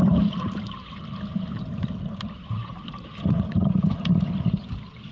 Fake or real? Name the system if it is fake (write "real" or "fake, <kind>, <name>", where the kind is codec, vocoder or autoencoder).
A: fake, vocoder, BigVGAN v2